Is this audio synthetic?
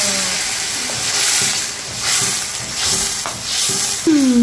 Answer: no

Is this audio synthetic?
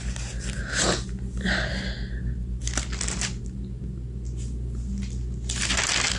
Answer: no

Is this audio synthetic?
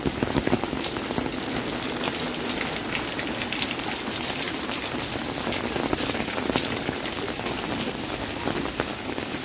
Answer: no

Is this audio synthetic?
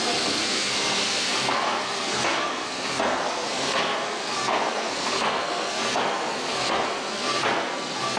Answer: yes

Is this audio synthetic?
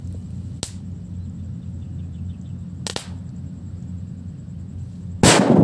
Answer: no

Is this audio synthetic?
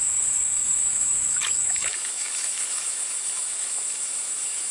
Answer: yes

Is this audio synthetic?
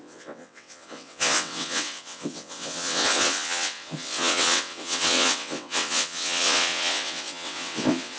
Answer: yes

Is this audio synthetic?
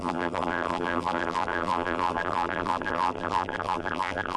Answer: yes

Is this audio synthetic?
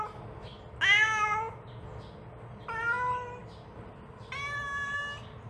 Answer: no